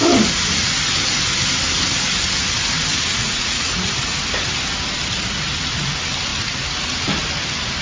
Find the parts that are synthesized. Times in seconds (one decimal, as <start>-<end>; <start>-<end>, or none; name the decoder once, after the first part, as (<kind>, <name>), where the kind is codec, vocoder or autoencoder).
3.2-3.9 (vocoder, Vocos)